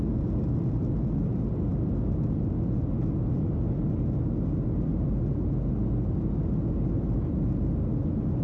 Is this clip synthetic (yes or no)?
no